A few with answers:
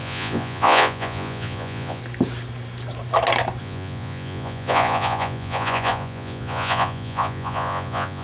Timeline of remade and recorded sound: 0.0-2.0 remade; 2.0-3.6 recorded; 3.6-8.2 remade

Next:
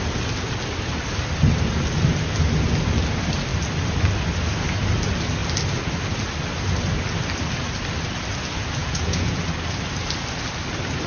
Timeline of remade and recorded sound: 0.0-8.8 recorded; 8.8-9.4 remade; 9.4-11.1 recorded

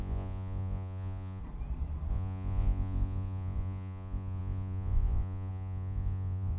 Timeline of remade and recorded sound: 0.0-1.4 remade; 1.4-2.1 recorded; 2.1-6.6 remade